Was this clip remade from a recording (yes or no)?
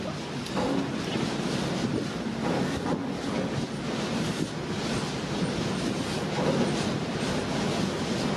no